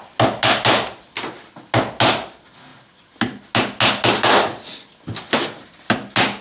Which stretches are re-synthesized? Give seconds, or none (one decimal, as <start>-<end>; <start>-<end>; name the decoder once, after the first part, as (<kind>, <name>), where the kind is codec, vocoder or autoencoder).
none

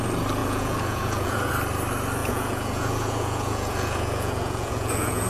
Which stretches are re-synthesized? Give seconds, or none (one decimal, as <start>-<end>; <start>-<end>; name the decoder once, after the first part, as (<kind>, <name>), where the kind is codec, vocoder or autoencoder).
0.4-1.5 (vocoder, Vocos); 2.2-5.3

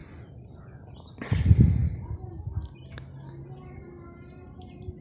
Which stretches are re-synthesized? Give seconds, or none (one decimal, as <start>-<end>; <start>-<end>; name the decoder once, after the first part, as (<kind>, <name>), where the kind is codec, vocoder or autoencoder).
none

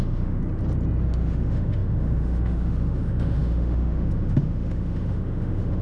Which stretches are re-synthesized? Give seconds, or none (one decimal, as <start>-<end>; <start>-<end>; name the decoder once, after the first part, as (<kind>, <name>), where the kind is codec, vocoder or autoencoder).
0.0-0.4 (autoencoder, DAC-VAE); 1.0-5.8

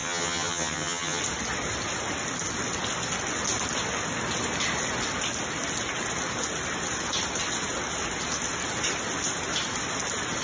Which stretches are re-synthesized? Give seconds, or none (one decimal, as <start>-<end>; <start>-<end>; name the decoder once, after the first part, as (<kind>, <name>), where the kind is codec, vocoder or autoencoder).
0.0-1.2 (vocoder, HiFi-GAN)

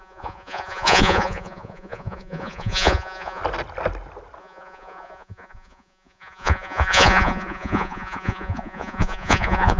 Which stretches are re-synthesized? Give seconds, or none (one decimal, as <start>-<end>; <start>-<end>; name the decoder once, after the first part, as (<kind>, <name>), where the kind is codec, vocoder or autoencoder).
0.0-3.4 (vocoder, Vocos); 4.4-9.8

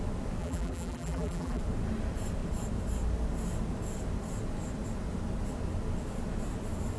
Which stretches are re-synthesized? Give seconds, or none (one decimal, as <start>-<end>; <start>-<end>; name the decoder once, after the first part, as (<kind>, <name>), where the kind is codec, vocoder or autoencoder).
0.4-1.6 (vocoder, BigVGAN v2)